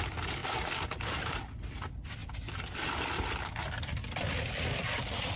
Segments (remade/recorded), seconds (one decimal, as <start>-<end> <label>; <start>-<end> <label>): 0.0-0.4 recorded; 0.4-1.4 remade; 1.4-2.2 recorded; 2.2-5.0 remade; 5.0-5.4 recorded